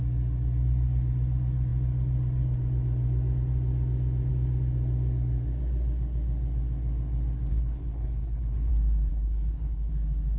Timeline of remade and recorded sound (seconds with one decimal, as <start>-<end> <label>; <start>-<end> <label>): 0.0-7.5 recorded; 7.5-8.7 remade; 8.7-9.1 recorded; 9.1-9.9 remade; 9.9-10.4 recorded